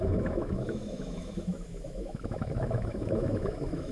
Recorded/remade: remade